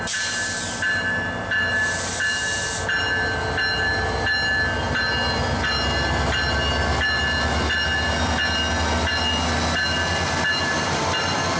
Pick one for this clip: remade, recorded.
recorded